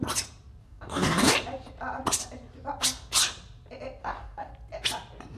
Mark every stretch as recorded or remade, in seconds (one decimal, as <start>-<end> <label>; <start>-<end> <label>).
0.0-0.6 recorded; 0.6-1.3 remade; 1.3-4.0 recorded; 4.0-4.5 remade; 4.5-5.4 recorded